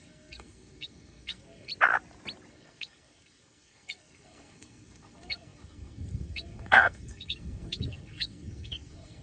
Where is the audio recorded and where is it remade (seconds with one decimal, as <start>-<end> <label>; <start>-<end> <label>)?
0.0-1.7 remade; 1.7-2.5 recorded; 2.5-9.2 remade